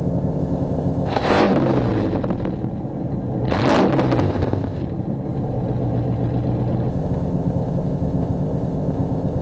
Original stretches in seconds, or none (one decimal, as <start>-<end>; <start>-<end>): 1.5-4.2; 4.8-6.9